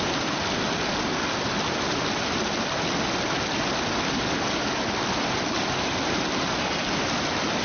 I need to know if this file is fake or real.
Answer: real